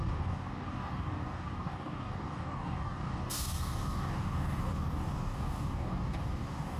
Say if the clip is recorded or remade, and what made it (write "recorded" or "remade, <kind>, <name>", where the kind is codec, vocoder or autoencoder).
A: remade, codec, DAC